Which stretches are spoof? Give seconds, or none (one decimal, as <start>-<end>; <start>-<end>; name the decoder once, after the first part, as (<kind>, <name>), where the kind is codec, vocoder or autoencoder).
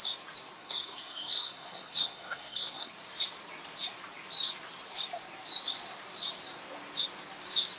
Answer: 0.6-2.9 (codec, SNAC)